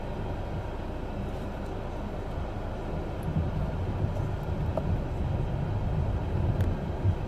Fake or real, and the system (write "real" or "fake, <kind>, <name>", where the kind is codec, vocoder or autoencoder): real